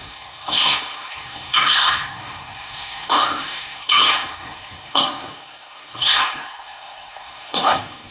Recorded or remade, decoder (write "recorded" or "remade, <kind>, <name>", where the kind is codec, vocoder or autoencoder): remade, codec, SNAC